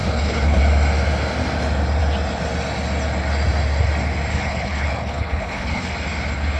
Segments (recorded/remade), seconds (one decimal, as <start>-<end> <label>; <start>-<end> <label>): 0.0-0.6 remade; 0.6-4.3 recorded; 4.3-5.9 remade; 5.9-6.6 recorded